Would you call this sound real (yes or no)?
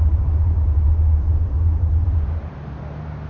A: no